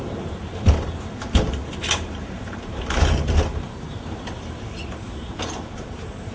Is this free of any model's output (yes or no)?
no